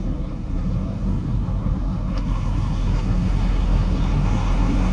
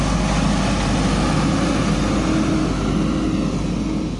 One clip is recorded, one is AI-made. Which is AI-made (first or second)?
first